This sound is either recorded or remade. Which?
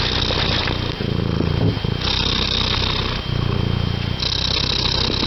recorded